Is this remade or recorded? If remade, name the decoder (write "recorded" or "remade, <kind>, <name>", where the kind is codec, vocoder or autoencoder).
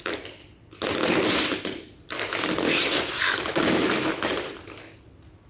recorded